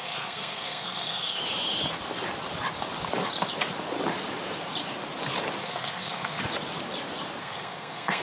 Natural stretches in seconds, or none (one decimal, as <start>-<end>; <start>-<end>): 1.4-5.6; 6.4-7.4